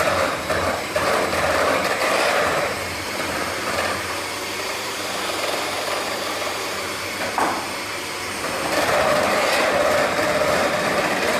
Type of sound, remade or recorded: remade